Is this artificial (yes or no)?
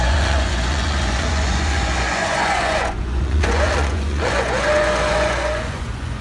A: yes